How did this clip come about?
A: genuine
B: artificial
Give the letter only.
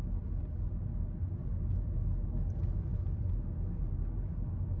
A